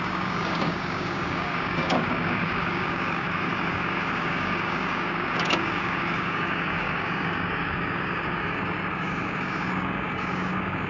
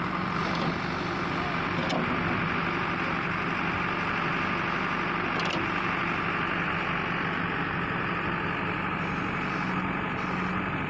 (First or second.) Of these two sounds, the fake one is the first